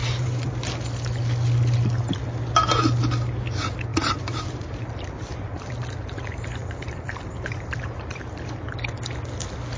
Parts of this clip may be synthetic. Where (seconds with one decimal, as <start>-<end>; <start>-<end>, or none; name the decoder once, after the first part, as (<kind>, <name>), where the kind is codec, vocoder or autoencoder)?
0.0-0.5 (vocoder, BigVGAN v2); 3.9-8.9